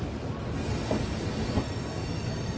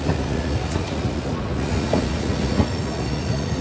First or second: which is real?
first